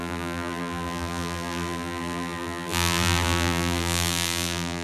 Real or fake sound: fake